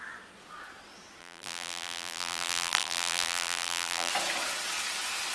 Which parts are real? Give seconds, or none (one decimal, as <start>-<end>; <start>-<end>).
0.0-1.2; 4.1-5.3